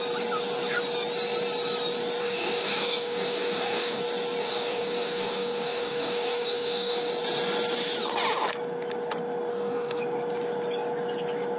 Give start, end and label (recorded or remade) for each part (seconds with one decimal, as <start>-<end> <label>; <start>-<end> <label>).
0.0-2.2 recorded; 2.2-4.0 remade; 4.0-4.4 recorded; 4.4-7.1 remade; 7.1-9.5 recorded; 9.5-10.0 remade; 10.0-11.6 recorded